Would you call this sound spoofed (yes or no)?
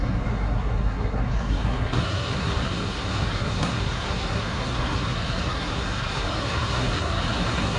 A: yes